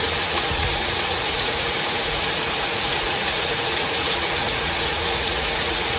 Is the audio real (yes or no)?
no